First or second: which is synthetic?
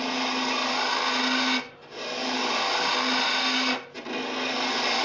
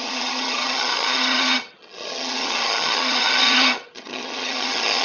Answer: second